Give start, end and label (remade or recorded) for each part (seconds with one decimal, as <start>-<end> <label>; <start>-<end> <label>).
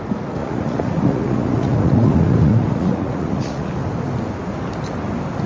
0.0-0.4 recorded; 0.4-3.7 remade; 3.7-5.5 recorded